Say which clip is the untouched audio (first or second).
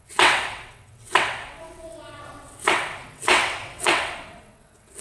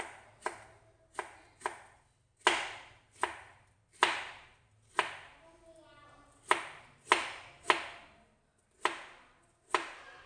second